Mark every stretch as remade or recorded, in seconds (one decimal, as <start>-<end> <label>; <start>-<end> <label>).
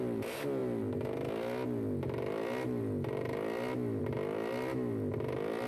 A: 0.0-5.7 recorded